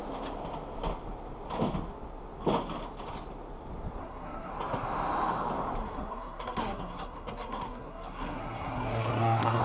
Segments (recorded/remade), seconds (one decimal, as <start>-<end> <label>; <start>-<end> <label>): 0.0-4.0 recorded; 4.0-4.5 remade; 4.5-5.8 recorded; 5.8-9.6 remade